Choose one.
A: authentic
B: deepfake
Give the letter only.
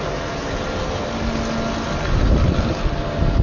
A